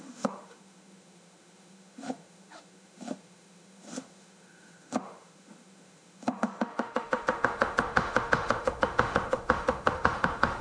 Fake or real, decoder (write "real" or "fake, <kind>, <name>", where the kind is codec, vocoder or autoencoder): fake, autoencoder, DAC-VAE